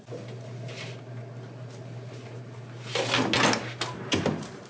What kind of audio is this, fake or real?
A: real